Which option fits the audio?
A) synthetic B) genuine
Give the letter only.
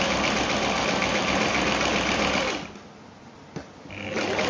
B